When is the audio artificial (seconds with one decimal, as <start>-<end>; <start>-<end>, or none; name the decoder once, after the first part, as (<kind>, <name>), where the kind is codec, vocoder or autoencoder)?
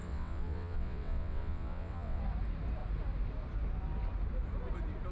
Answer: 0.0-2.2 (vocoder, WaveNeXt)